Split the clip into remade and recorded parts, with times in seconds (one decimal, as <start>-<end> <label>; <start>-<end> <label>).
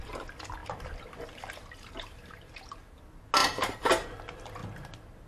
0.0-0.6 recorded; 0.6-3.0 remade; 3.0-3.4 recorded; 3.4-3.9 remade; 3.9-5.3 recorded